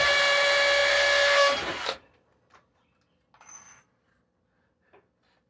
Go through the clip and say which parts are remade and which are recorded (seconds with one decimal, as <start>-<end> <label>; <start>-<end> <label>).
0.0-5.5 recorded